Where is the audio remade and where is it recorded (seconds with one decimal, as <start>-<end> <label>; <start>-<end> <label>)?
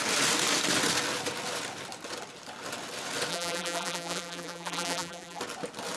0.0-3.3 recorded; 3.3-5.4 remade; 5.4-6.0 recorded